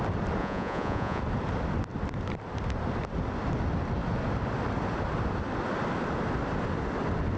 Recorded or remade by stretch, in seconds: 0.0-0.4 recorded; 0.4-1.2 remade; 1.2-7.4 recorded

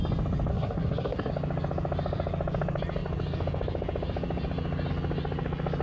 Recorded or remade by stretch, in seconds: 0.0-0.5 recorded; 0.5-1.3 remade; 1.3-5.8 recorded

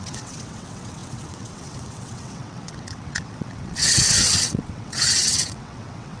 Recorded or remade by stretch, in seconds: 0.0-6.2 remade

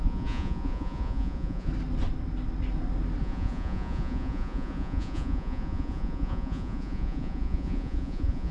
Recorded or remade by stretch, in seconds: 0.0-1.7 remade; 1.7-3.2 recorded; 3.2-8.5 remade

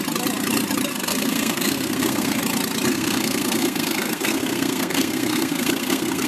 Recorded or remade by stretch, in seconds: 0.0-0.9 recorded; 0.9-2.4 remade; 2.4-2.9 recorded; 2.9-6.3 remade

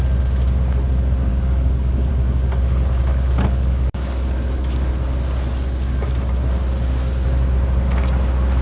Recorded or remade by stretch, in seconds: 0.0-1.3 recorded; 1.3-2.1 remade; 2.1-3.1 recorded; 3.1-4.9 remade; 4.9-8.6 recorded

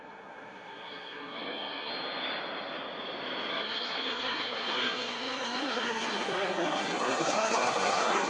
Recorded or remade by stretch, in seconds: 0.0-1.9 remade; 1.9-3.5 recorded; 3.5-8.3 remade

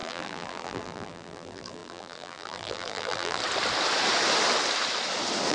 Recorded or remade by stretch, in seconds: 0.0-3.4 remade; 3.4-5.5 recorded